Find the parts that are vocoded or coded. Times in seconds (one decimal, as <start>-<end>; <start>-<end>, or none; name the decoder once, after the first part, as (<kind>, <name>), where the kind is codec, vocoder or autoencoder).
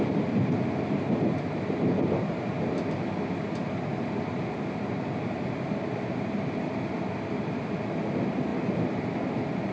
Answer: none